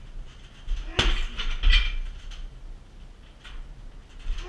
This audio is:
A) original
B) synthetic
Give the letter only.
A